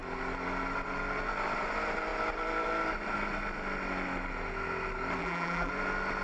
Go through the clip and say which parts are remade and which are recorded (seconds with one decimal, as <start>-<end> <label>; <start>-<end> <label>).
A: 0.0-5.2 recorded; 5.2-5.7 remade; 5.7-6.2 recorded